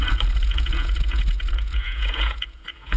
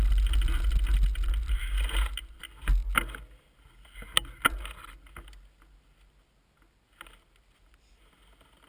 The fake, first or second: first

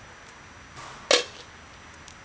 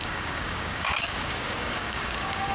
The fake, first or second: second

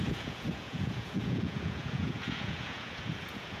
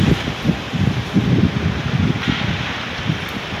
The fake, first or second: first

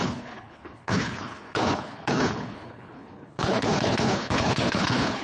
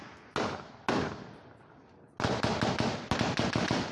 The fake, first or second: first